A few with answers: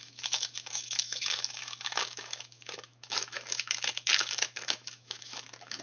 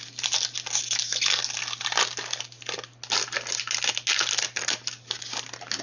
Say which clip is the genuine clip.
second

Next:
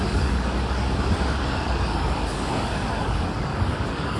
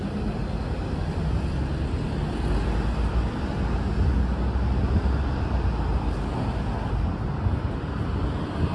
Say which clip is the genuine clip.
second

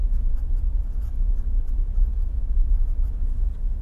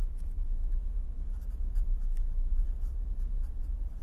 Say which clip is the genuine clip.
second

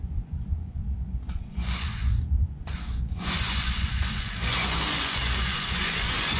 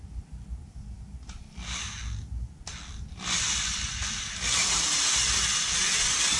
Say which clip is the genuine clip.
second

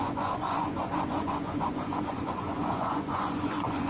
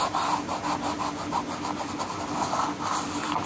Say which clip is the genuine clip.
second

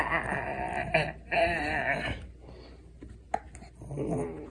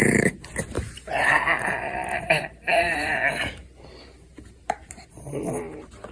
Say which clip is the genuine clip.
first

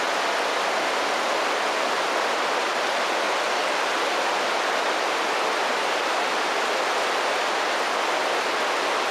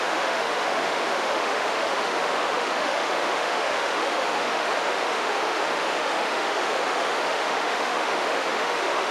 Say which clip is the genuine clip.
first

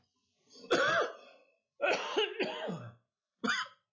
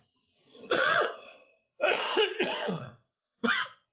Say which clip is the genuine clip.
first